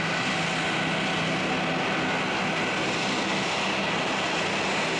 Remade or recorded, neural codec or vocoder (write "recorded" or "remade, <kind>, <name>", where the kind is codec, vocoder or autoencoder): recorded